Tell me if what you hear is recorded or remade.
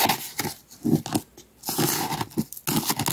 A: recorded